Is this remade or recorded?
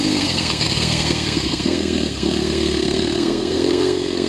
remade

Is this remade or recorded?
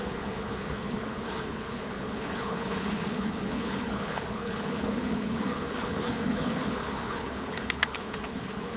remade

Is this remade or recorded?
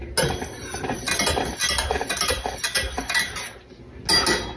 recorded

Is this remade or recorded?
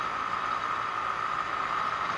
remade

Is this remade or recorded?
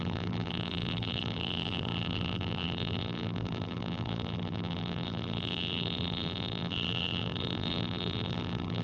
remade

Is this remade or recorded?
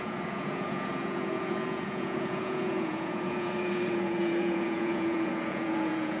remade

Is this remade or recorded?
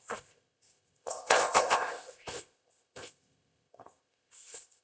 remade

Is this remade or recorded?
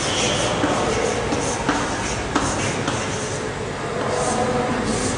recorded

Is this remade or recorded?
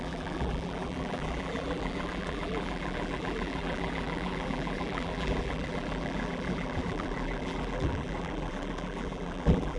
remade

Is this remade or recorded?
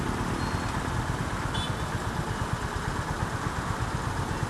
recorded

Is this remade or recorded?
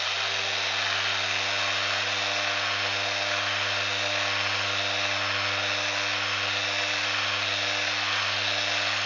recorded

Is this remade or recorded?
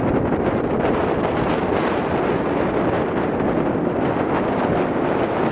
recorded